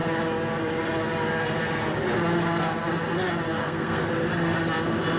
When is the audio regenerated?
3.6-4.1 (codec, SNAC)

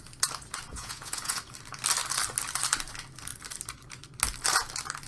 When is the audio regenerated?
0.7-1.4 (vocoder, Vocos)

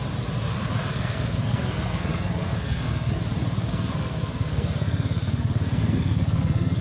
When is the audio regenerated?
0.9-3.2 (codec, SNAC); 3.6-6.8

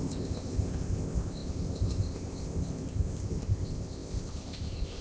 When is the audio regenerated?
0.0-5.0 (codec, ZipCodec)

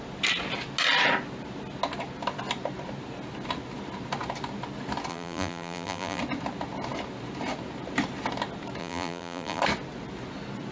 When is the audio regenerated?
5.1-6.2 (vocoder, BigVGAN v2); 8.8-9.6

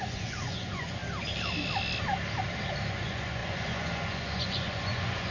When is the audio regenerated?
0.0-1.0 (vocoder, Vocos); 2.9-5.3

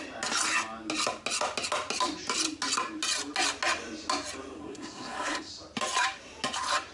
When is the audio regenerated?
4.6-5.5 (codec, SNAC)

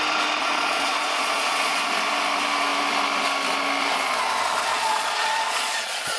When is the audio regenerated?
0.4-1.9 (vocoder, Vocos); 4.7-6.2